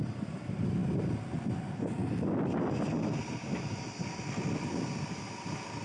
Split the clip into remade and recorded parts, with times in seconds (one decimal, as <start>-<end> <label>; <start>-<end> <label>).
0.0-5.8 recorded